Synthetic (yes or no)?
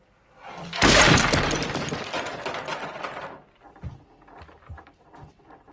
no